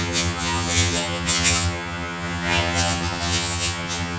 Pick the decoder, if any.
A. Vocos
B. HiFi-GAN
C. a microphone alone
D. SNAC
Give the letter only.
B